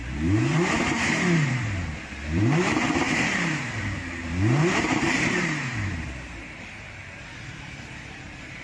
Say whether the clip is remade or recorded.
remade